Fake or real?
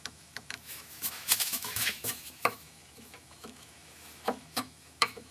fake